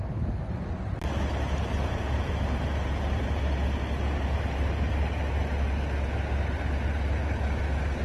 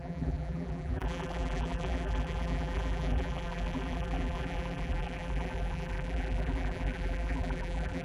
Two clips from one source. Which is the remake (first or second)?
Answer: second